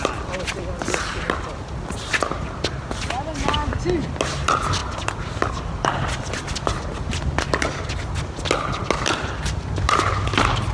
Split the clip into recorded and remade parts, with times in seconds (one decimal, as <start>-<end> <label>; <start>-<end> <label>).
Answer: 0.0-10.7 recorded